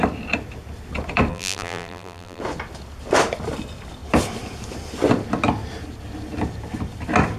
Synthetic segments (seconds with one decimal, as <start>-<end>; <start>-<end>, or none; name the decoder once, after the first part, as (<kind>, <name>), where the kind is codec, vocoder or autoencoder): 1.3-2.4 (vocoder, BigVGAN v2)